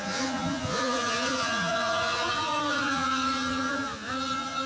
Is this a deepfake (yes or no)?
yes